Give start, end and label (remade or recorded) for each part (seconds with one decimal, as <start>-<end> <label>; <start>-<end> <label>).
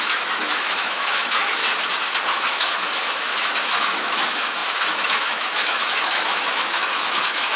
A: 0.0-1.6 remade; 1.6-2.5 recorded; 2.5-7.6 remade